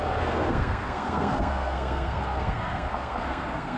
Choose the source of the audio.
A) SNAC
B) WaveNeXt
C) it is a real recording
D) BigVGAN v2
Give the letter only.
A